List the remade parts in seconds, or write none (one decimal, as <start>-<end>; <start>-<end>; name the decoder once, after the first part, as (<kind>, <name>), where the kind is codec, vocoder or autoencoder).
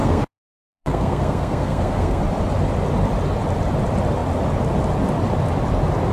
0.0-2.2 (codec, SNAC)